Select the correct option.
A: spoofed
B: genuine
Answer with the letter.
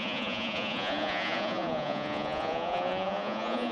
A